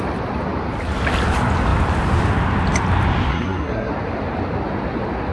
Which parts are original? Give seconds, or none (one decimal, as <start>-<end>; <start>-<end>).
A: 0.0-3.3; 3.9-5.3